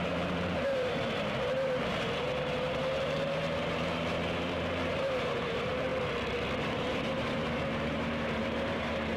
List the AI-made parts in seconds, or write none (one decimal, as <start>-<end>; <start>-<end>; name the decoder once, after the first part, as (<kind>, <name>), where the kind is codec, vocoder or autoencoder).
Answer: 0.0-5.9 (vocoder, BigVGAN v2); 6.6-9.2